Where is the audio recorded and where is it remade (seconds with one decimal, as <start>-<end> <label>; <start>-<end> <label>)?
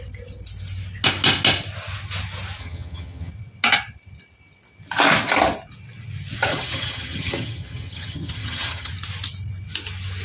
0.0-2.6 recorded; 2.6-3.3 remade; 3.3-6.5 recorded; 6.5-8.9 remade; 8.9-10.2 recorded